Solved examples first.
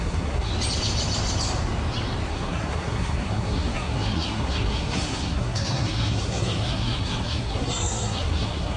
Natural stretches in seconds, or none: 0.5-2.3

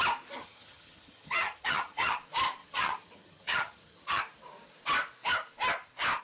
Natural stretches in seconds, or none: 0.0-0.4; 2.2-2.6; 4.2-6.2

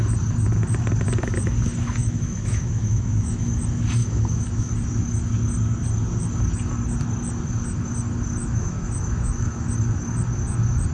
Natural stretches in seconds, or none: 0.0-2.0; 3.5-4.0; 4.7-8.4; 9.7-10.9